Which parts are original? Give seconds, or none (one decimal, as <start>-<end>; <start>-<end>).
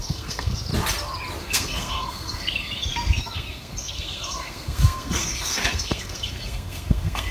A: 0.7-1.4